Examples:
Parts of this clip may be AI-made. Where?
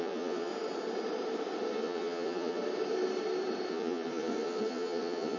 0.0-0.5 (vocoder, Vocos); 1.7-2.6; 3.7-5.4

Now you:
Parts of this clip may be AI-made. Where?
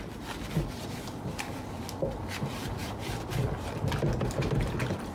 2.8-4.0 (vocoder, BigVGAN v2)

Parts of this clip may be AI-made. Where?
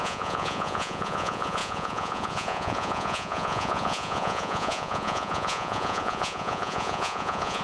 0.0-7.6 (vocoder, Vocos)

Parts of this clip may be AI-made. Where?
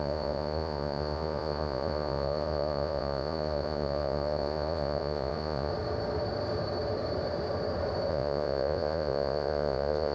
0.0-5.7 (vocoder, Vocos); 8.1-10.1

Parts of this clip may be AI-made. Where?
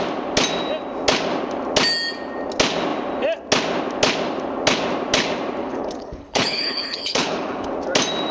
5.6-7.7 (codec, HILCodec)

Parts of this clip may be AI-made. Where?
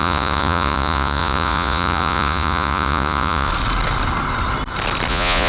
0.0-3.5 (vocoder, Vocos); 5.1-5.5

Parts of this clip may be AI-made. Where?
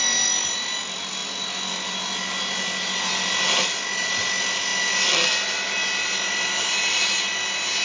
none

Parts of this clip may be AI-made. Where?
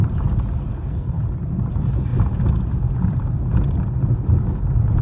0.7-1.2 (codec, SNAC)